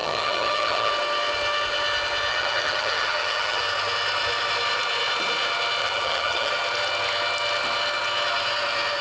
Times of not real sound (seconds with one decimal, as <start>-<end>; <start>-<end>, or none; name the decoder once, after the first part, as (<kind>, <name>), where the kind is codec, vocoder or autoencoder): 0.0-0.9 (vocoder, HiFi-GAN); 2.3-3.6; 5.8-6.5